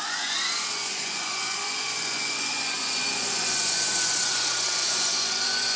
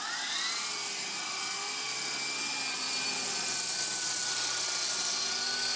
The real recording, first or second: second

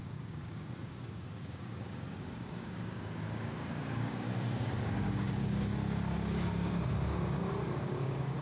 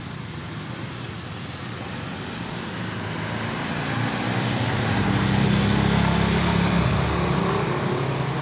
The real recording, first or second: second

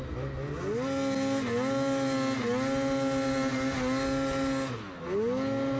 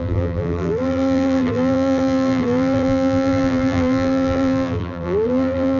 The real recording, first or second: first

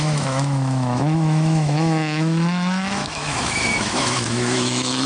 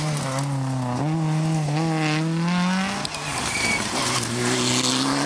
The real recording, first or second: second